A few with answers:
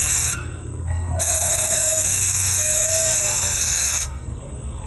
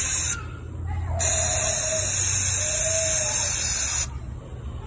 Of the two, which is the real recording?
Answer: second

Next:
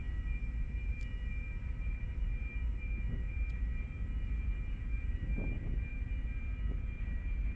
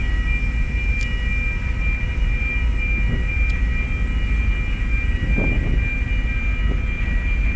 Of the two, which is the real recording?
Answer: second